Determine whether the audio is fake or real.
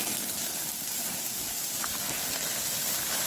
real